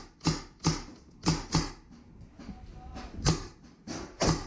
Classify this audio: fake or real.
real